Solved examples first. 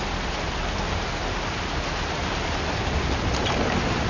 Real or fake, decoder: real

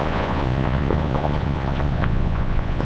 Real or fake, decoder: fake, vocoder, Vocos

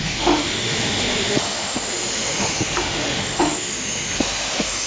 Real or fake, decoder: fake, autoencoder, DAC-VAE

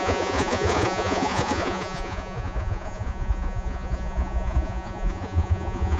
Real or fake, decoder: fake, vocoder, Vocos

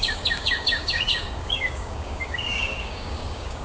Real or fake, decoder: fake, codec, DAC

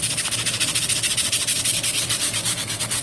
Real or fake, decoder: real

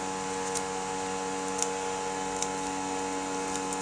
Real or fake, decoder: real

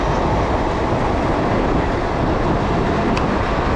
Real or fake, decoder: real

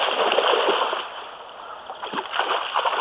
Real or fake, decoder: real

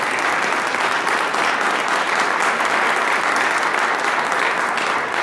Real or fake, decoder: real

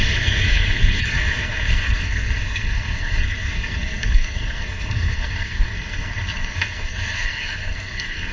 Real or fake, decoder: fake, codec, SNAC